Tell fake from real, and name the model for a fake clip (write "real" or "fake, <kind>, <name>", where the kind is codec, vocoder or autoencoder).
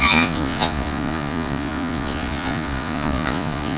fake, vocoder, Vocos